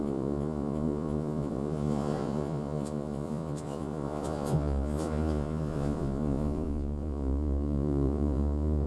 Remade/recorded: remade